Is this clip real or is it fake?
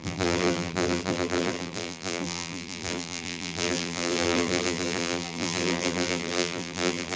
fake